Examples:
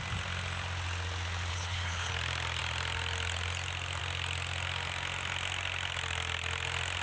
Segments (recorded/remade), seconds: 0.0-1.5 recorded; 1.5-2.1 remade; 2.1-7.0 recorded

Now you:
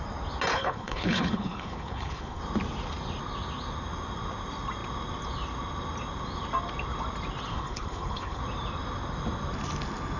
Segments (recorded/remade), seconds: 0.0-0.5 recorded; 0.5-2.4 remade; 2.4-7.5 recorded; 7.5-8.4 remade; 8.4-10.2 recorded

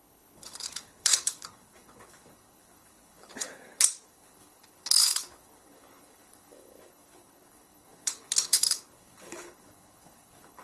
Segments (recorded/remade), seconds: 0.0-10.6 remade